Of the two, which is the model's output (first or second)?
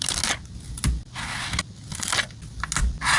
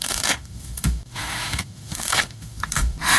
second